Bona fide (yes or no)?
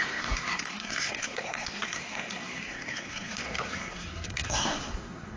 no